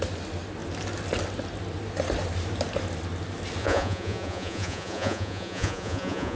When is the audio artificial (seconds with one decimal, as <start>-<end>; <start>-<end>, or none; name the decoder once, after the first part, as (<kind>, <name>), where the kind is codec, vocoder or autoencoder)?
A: 3.6-6.4 (vocoder, Vocos)